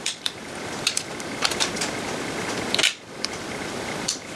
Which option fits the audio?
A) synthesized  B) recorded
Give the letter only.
A